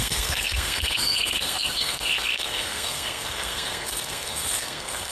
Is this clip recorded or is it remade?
remade